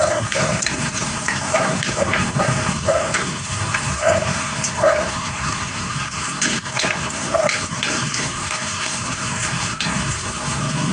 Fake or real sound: fake